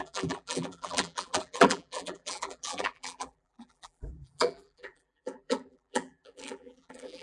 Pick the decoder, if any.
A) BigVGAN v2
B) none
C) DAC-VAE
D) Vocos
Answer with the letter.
A